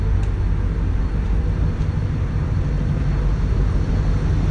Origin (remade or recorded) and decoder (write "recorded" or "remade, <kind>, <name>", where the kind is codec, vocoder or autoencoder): recorded